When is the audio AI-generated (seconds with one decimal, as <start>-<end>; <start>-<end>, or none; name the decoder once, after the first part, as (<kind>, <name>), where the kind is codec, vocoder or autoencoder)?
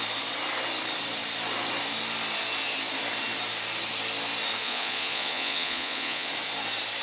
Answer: 4.6-6.3 (vocoder, Vocos)